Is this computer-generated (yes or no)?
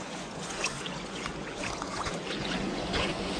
yes